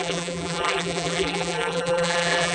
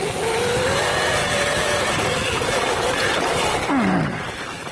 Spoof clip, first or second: first